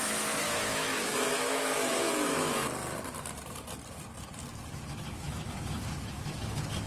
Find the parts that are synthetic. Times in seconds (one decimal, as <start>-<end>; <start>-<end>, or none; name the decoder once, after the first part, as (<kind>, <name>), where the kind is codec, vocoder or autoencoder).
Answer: 0.0-2.6 (autoencoder, DAC-VAE); 4.7-6.9